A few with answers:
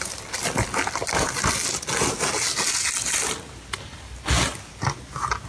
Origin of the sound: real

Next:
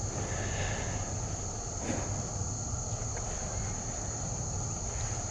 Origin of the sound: real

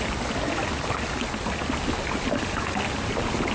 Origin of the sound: real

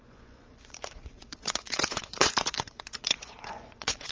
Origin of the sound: fake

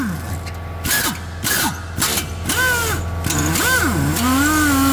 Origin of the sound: real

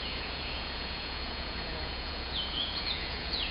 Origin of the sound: fake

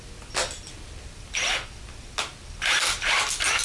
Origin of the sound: real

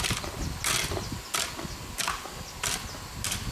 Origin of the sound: real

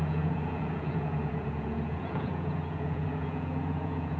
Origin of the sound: fake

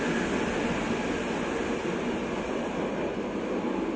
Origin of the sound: real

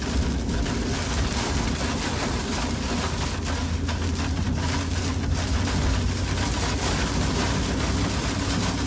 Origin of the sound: real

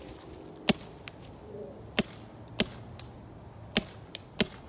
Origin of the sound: real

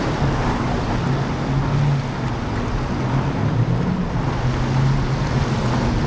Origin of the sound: real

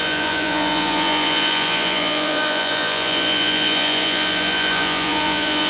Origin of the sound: fake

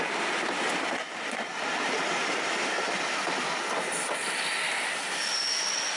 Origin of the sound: real